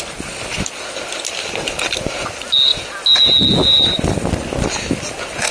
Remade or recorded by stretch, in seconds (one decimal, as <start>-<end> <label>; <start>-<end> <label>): 0.0-5.5 recorded